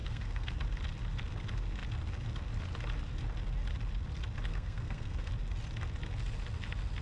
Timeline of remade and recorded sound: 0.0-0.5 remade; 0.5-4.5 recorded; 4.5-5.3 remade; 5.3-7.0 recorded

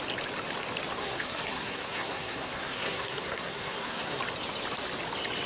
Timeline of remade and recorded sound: 0.0-1.0 recorded; 1.0-4.2 remade; 4.2-5.5 recorded

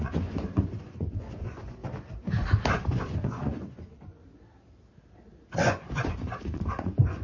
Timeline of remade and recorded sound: 0.0-1.8 remade; 1.8-2.7 recorded; 2.7-4.2 remade; 4.2-5.6 recorded; 5.6-7.2 remade

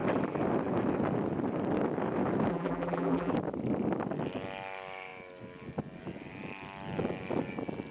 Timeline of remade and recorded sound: 0.0-2.5 recorded; 2.5-3.3 remade; 3.3-7.9 recorded

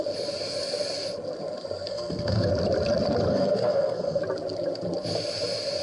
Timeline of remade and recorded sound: 0.0-1.9 recorded; 1.9-2.5 remade; 2.5-3.3 recorded; 3.3-4.2 remade; 4.2-5.8 recorded

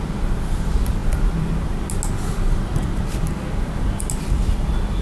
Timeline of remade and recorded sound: 0.0-5.0 recorded

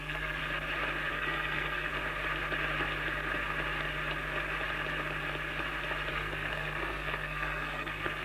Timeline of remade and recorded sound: 0.0-0.4 remade; 0.4-1.1 recorded; 1.1-1.9 remade; 1.9-6.1 recorded; 6.1-8.2 remade